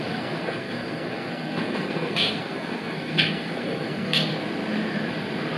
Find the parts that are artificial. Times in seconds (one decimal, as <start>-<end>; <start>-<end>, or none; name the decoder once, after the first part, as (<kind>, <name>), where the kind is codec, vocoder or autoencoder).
0.0-4.3 (codec, SNAC)